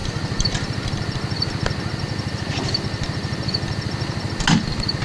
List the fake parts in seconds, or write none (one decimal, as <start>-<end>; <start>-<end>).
none